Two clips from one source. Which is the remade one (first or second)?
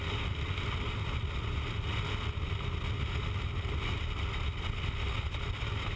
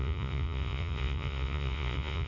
second